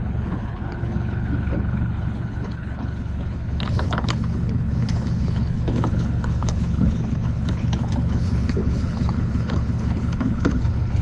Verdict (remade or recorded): remade